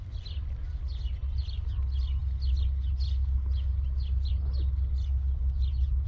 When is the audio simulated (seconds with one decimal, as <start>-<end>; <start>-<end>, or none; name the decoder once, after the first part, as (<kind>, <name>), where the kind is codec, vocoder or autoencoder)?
none